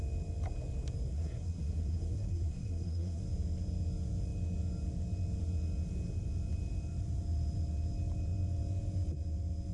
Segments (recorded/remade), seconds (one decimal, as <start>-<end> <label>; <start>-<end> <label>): 0.0-1.1 recorded; 1.1-3.2 remade; 3.2-9.7 recorded